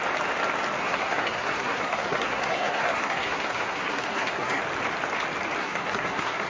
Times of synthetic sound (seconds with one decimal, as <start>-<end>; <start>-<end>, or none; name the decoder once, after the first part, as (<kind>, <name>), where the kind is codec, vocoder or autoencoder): 0.8-4.6 (codec, SNAC); 5.6-6.5